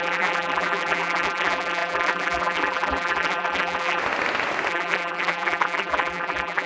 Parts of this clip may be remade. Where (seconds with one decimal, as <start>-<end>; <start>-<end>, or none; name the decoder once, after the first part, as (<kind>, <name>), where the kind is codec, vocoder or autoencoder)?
0.0-4.0 (vocoder, BigVGAN v2); 4.7-6.7